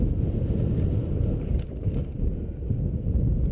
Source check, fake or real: real